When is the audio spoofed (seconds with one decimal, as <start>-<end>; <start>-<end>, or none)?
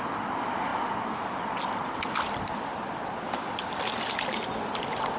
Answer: none